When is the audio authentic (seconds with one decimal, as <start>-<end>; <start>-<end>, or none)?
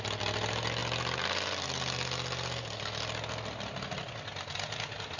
0.0-5.2